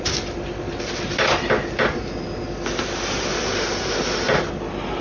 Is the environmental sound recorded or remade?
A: recorded